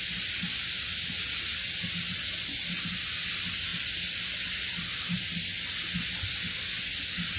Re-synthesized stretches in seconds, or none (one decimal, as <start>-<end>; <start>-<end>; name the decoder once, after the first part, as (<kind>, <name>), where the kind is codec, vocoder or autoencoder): none